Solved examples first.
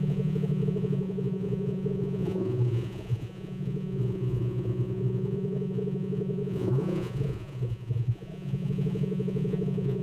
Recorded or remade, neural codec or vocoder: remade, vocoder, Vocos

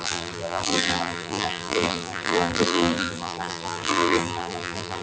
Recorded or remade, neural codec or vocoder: remade, vocoder, BigVGAN v2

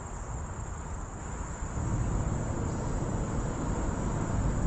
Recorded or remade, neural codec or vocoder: recorded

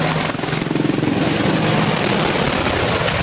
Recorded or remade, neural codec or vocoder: recorded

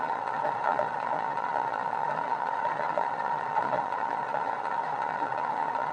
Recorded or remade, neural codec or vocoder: remade, vocoder, Vocos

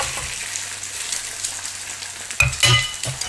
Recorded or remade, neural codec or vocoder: recorded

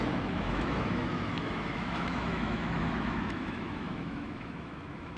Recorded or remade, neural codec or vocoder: remade, autoencoder, DAC-VAE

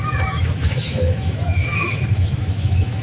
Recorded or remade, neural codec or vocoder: remade, autoencoder, DAC-VAE